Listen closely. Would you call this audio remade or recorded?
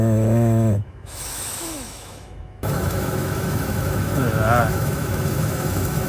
remade